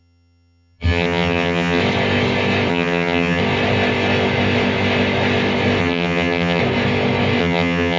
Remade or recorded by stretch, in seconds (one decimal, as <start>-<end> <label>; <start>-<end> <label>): 0.0-1.8 remade; 1.8-2.7 recorded; 2.7-3.4 remade; 3.4-5.8 recorded; 5.8-6.6 remade; 6.6-7.4 recorded; 7.4-8.0 remade